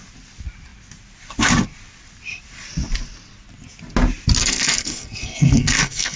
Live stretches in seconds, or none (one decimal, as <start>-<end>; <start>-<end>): 0.0-4.4